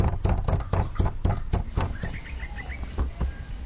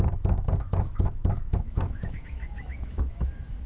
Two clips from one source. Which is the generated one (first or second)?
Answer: second